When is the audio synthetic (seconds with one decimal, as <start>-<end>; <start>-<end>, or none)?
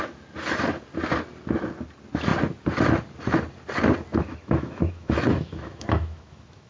4.1-6.7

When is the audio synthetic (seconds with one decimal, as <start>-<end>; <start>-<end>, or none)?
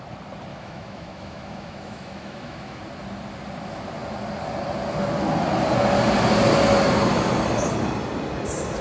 0.5-2.8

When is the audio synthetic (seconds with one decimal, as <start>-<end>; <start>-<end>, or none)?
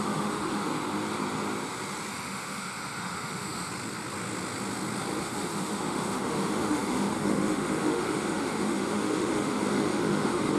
0.0-0.7; 2.1-3.7; 5.2-10.6